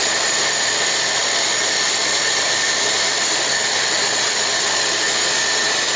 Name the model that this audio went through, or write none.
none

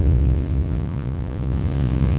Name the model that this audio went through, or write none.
vocoder, Vocos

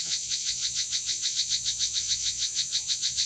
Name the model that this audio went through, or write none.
vocoder, Vocos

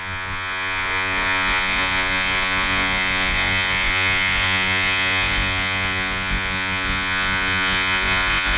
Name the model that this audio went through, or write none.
vocoder, Vocos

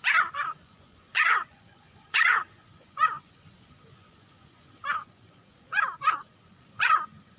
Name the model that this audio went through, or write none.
vocoder, Vocos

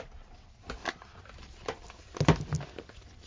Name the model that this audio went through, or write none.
none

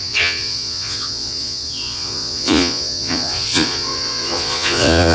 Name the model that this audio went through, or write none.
vocoder, Vocos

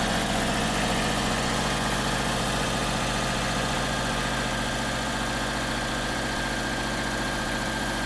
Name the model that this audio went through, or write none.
vocoder, Vocos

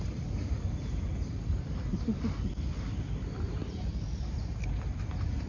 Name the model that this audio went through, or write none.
none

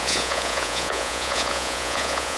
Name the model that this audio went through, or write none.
vocoder, Vocos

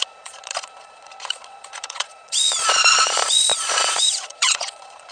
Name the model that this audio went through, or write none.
vocoder, Vocos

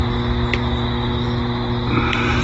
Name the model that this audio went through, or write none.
none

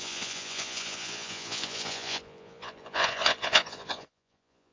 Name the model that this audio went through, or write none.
vocoder, Vocos